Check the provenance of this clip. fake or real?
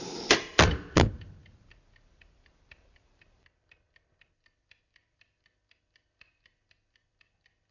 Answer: fake